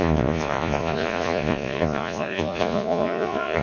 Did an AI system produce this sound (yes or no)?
yes